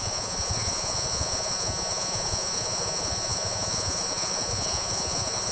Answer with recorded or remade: remade